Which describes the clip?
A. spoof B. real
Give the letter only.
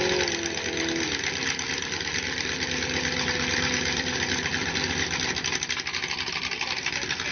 A